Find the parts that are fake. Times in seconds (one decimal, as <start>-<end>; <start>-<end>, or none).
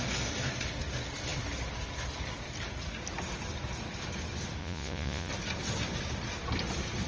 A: 4.6-5.3